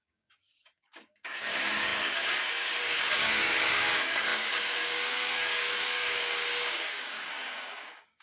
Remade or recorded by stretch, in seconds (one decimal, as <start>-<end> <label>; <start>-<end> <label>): 0.0-8.2 remade